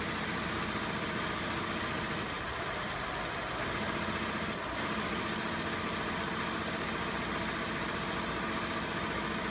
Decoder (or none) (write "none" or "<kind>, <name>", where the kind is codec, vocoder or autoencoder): none